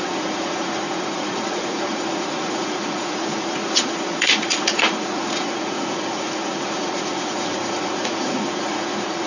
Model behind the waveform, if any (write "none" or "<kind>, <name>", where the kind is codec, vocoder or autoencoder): vocoder, Vocos